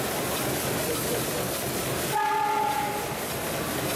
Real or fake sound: real